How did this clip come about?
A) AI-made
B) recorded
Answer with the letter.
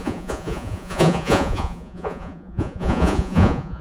A